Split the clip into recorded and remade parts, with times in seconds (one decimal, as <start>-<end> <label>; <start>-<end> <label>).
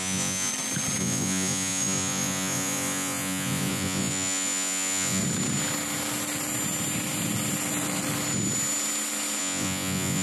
0.0-0.5 remade; 0.5-1.0 recorded; 1.0-5.2 remade; 5.2-9.4 recorded; 9.4-10.2 remade